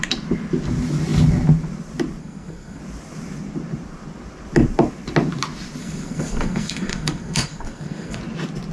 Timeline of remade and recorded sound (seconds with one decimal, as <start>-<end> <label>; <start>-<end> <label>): 0.0-2.2 recorded; 2.2-2.8 remade; 2.8-5.8 recorded; 5.8-8.2 remade; 8.2-8.7 recorded